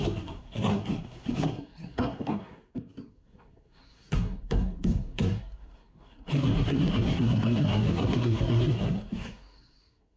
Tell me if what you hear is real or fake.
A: fake